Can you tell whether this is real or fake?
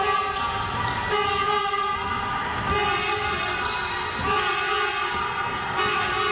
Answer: real